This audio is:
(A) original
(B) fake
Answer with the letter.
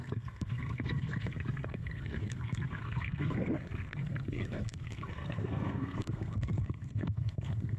B